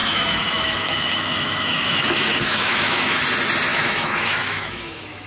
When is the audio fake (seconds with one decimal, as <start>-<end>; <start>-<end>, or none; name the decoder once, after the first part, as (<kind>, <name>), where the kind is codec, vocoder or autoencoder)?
0.0-3.2 (autoencoder, DAC-VAE); 3.7-5.3